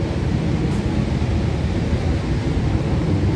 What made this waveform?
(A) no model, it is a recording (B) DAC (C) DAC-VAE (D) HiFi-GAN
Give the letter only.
A